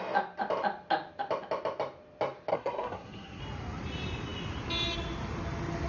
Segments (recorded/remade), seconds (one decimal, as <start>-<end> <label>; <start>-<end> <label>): 0.0-2.5 recorded; 2.5-3.4 remade; 3.4-5.9 recorded